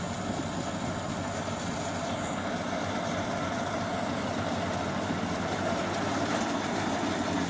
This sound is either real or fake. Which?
real